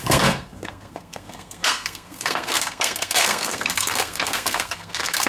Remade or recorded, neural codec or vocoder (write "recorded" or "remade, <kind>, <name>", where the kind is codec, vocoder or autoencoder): remade, codec, SNAC